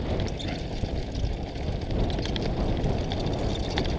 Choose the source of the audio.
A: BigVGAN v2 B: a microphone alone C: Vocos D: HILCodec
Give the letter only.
B